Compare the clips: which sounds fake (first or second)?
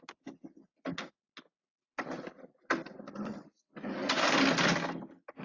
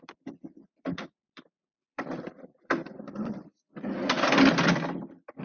second